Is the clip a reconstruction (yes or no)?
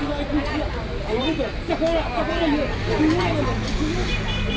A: no